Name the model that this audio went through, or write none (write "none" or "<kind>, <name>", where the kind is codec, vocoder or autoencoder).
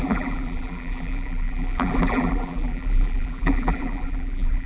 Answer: vocoder, BigVGAN v2